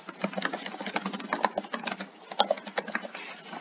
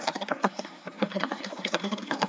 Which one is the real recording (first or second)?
first